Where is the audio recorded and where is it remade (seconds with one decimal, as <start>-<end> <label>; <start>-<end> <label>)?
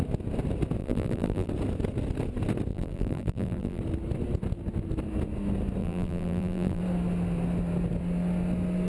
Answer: 0.0-0.8 recorded; 0.8-1.5 remade; 1.5-2.7 recorded; 2.7-3.8 remade; 3.8-5.8 recorded; 5.8-6.8 remade; 6.8-8.9 recorded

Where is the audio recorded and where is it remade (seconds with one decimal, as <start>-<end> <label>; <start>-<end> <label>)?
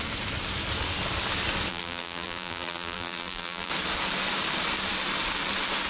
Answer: 0.0-1.7 recorded; 1.7-3.7 remade; 3.7-5.9 recorded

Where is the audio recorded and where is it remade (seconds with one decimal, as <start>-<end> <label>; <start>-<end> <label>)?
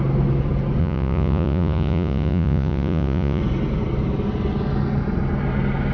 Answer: 0.0-0.8 recorded; 0.8-3.4 remade; 3.4-5.9 recorded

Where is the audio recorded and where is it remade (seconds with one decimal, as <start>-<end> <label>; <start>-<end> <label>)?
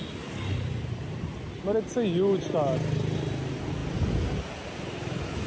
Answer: 0.0-5.5 recorded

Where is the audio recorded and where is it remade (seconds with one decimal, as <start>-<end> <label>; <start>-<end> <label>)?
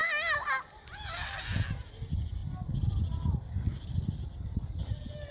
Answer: 0.0-5.3 recorded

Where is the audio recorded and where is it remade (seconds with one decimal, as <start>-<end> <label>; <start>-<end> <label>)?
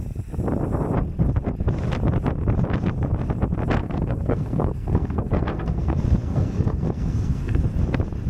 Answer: 0.0-3.8 recorded; 3.8-7.6 remade; 7.6-8.3 recorded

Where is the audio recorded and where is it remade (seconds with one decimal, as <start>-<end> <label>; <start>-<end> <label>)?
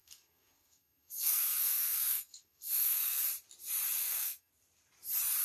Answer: 0.0-3.2 remade; 3.2-4.0 recorded; 4.0-4.5 remade; 4.5-5.4 recorded